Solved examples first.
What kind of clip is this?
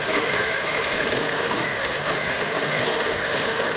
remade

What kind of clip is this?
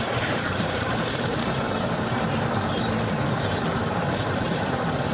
remade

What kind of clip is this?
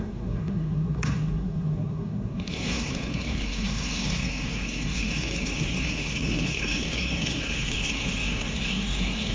remade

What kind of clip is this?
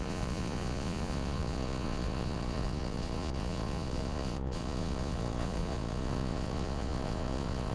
remade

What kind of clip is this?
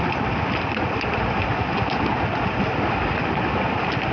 recorded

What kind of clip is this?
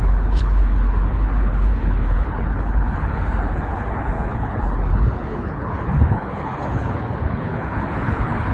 remade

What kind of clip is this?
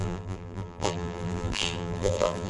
remade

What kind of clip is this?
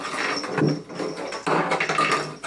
recorded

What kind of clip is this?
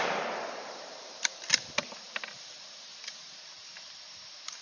remade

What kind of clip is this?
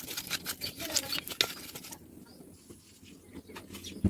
recorded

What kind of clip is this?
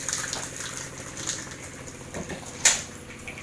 recorded